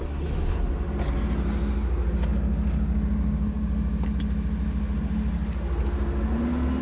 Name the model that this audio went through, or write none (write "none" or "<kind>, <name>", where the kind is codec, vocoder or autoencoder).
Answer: none